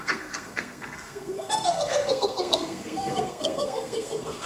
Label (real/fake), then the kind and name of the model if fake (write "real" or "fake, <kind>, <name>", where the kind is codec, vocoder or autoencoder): fake, codec, SNAC